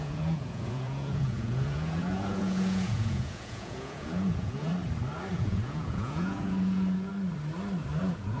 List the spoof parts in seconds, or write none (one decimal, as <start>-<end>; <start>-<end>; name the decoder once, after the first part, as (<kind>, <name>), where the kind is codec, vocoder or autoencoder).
0.0-4.7 (vocoder, Vocos); 5.3-7.1; 8.0-8.4